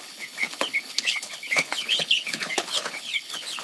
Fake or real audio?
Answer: fake